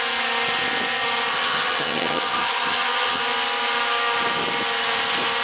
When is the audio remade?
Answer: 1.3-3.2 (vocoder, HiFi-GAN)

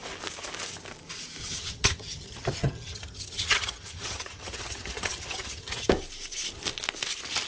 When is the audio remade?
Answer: 1.4-5.9 (vocoder, HiFi-GAN)

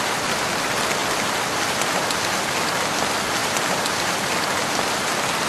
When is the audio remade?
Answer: 3.4-5.5 (vocoder, BigVGAN v2)

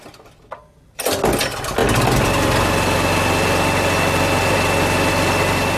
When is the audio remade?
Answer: none

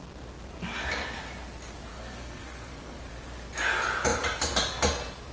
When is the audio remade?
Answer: 1.9-3.0 (codec, SNAC)

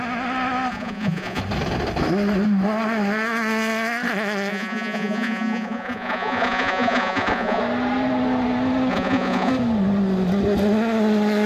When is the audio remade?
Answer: 0.7-1.4 (vocoder, Vocos); 4.5-7.6; 8.9-9.5